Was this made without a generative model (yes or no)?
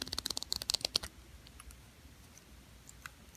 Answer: yes